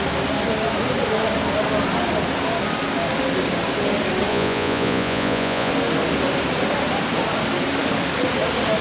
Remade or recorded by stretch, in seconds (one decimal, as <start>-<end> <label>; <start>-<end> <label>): 0.0-4.3 recorded; 4.3-5.7 remade; 5.7-8.8 recorded